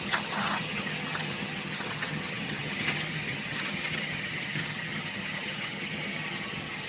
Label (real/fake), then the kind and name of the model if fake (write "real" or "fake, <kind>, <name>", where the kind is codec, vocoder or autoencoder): fake, vocoder, HiFi-GAN